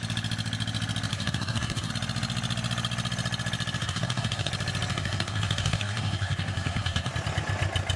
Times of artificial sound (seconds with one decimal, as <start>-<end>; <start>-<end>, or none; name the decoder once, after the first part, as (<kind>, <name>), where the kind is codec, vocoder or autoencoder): 1.1-1.9 (codec, SNAC); 3.8-4.5; 4.9-7.1